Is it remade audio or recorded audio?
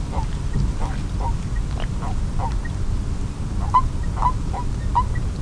recorded